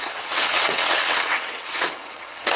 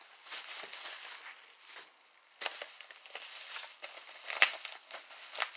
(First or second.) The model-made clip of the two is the first